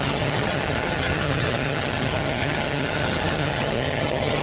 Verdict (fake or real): fake